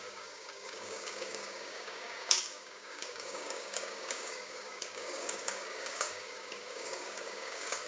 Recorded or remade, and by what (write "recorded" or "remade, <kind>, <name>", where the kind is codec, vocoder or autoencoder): remade, codec, DAC